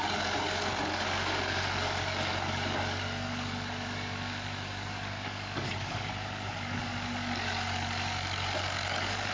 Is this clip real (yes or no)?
no